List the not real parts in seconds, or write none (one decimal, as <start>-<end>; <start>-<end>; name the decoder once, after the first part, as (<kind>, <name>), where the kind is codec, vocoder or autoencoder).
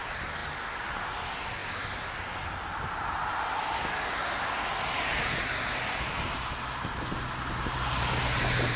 none